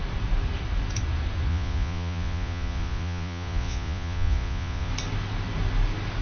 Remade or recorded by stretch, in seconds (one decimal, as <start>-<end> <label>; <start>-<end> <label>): 0.0-1.5 recorded; 1.5-4.9 remade; 4.9-6.2 recorded